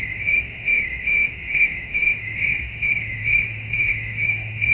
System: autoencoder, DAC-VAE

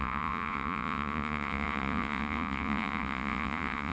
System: vocoder, Vocos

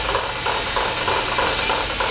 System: none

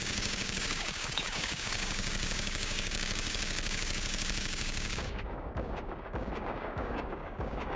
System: codec, DAC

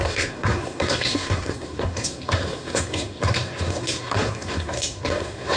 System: codec, SNAC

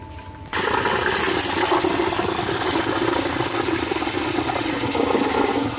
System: vocoder, BigVGAN v2